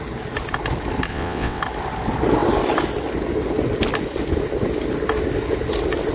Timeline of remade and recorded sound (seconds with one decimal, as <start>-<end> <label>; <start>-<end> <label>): 0.0-1.1 recorded; 1.1-1.6 remade; 1.6-6.1 recorded